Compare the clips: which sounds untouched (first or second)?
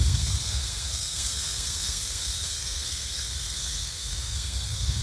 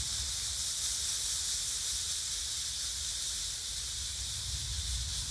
second